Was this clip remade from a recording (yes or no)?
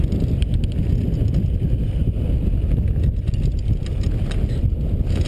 no